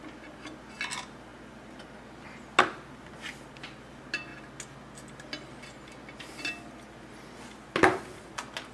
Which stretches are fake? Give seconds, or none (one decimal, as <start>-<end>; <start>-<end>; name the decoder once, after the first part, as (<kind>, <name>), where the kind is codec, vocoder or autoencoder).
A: none